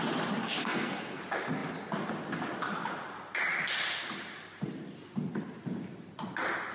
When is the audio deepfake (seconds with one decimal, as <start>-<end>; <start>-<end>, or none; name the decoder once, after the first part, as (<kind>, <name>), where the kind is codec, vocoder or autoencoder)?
0.4-1.2 (codec, SNAC)